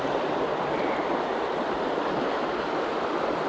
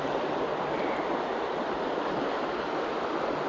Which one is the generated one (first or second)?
first